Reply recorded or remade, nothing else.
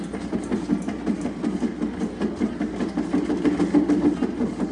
recorded